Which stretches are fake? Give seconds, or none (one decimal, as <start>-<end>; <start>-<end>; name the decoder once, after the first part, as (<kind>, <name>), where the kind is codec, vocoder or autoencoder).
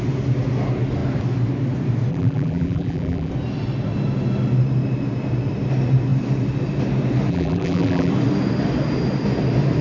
2.1-3.3 (vocoder, BigVGAN v2); 7.3-8.1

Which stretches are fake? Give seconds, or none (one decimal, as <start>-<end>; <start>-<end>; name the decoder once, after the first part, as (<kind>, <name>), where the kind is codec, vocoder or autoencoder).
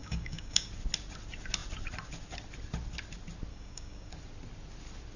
0.0-0.7 (codec, DAC); 3.5-4.1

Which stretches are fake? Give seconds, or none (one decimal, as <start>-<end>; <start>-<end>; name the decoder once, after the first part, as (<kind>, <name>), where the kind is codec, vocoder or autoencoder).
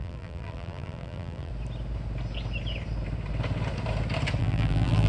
0.0-1.5 (vocoder, BigVGAN v2); 4.4-5.1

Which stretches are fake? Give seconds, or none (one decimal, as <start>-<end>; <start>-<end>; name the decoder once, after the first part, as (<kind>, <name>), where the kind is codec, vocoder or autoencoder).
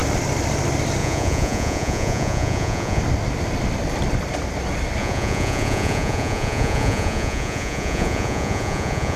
1.0-3.0 (vocoder, Vocos); 5.0-9.2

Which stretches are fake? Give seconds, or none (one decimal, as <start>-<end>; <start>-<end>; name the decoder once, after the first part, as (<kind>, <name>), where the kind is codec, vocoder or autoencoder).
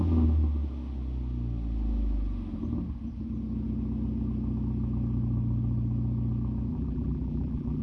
6.7-7.8 (vocoder, BigVGAN v2)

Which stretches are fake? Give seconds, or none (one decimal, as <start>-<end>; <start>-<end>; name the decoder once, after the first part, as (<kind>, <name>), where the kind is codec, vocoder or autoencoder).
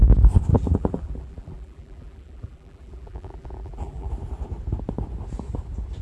0.5-4.1 (vocoder, BigVGAN v2)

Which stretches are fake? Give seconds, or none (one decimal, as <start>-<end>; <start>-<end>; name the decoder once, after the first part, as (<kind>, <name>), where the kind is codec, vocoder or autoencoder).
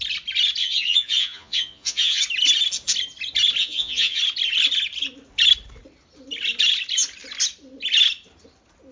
0.6-2.2 (vocoder, Vocos); 3.6-4.2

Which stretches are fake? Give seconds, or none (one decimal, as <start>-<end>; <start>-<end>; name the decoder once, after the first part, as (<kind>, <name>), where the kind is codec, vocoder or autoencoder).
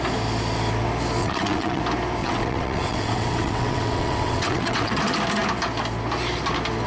1.2-1.8 (vocoder, WaveNeXt); 2.2-4.9